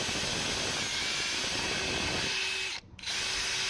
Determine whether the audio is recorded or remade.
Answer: recorded